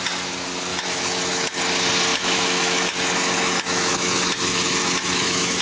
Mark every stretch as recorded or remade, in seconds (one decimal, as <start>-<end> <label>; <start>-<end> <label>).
0.0-0.7 recorded; 0.7-1.6 remade; 1.6-2.1 recorded; 2.1-5.6 remade